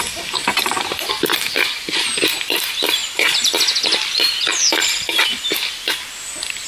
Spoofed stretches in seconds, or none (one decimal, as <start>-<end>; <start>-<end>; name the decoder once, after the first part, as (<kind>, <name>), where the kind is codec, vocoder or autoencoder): none